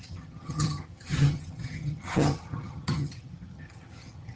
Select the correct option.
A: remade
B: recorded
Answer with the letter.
A